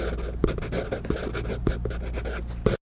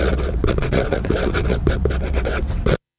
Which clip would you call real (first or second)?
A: first